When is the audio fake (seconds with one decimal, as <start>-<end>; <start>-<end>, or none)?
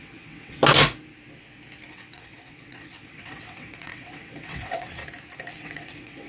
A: 0.0-0.6; 1.9-5.0; 5.5-6.3